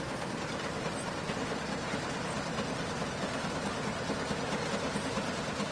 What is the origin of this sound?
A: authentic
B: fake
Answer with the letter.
A